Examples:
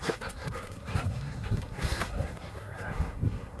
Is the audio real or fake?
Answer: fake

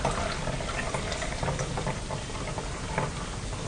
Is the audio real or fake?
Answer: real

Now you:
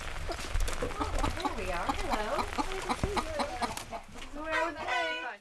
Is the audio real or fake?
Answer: real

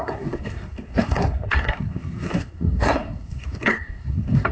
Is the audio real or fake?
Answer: fake